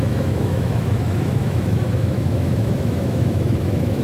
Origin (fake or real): fake